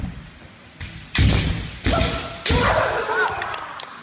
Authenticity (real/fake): real